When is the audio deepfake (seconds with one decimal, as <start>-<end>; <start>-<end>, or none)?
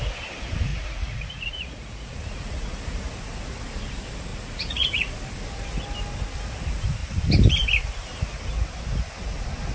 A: 0.7-2.8; 4.3-5.1